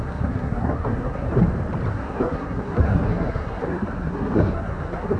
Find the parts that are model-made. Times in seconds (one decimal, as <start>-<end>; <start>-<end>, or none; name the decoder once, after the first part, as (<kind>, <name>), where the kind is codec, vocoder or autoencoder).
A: 0.0-1.3 (codec, SNAC); 1.9-5.2